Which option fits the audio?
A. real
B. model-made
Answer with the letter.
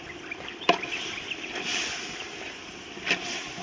B